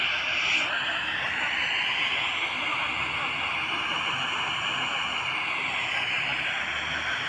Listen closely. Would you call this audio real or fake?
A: real